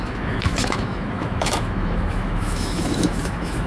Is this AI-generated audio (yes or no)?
yes